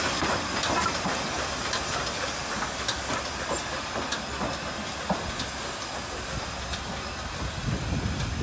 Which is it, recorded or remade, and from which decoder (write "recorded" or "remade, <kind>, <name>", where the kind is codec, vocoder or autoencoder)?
recorded